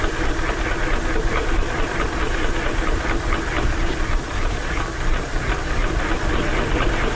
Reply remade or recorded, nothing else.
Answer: recorded